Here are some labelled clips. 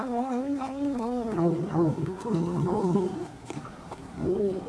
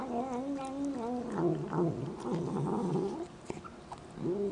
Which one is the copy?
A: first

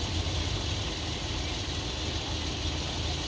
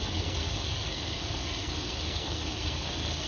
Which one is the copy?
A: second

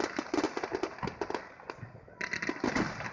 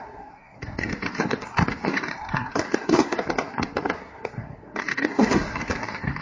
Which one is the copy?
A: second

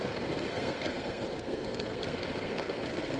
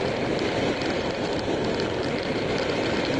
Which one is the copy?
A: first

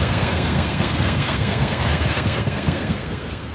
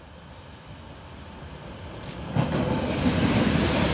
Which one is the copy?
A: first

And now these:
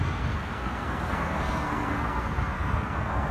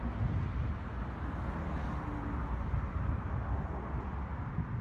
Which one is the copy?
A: first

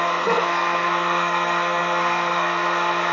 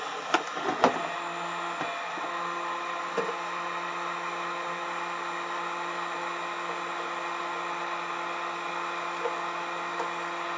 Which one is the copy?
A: first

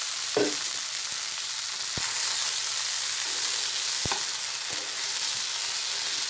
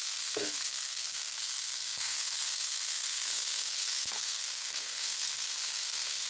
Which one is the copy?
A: second